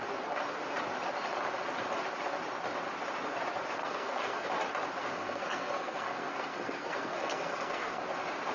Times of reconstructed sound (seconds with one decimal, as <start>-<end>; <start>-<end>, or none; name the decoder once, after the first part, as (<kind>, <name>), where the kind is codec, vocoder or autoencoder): 3.8-4.5 (codec, SNAC); 5.0-8.0